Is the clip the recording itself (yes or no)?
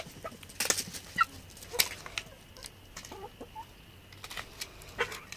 yes